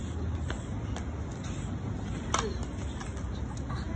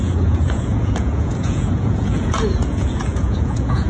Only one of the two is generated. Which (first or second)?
second